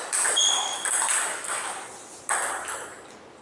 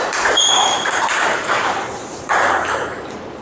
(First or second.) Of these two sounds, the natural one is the first